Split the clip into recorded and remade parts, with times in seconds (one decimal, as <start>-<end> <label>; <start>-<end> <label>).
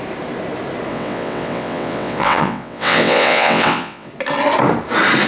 0.0-0.9 recorded; 0.9-4.1 remade; 4.1-5.3 recorded